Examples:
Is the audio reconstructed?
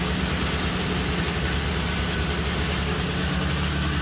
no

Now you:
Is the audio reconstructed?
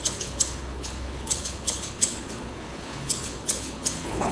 yes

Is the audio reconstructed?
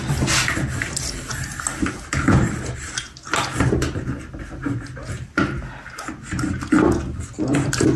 no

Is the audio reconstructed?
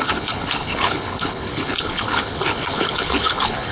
yes